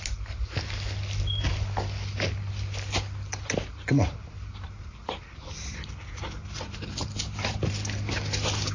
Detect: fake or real real